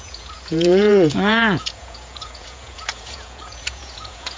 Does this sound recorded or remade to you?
remade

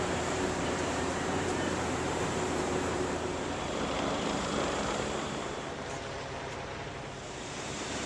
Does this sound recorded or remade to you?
remade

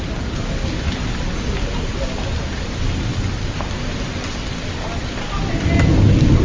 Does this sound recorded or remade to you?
recorded